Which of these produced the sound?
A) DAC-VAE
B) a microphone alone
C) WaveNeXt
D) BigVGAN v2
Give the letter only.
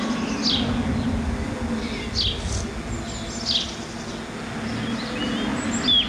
B